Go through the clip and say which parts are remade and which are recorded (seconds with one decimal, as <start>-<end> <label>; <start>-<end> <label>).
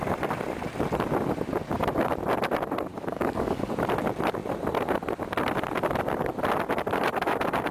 0.0-2.9 recorded; 2.9-3.7 remade; 3.7-7.7 recorded